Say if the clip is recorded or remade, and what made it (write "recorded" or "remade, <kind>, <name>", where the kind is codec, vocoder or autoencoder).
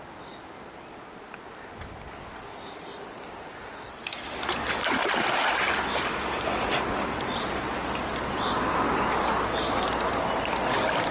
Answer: recorded